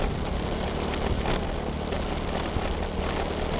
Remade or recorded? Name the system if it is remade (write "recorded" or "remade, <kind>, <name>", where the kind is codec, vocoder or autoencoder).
recorded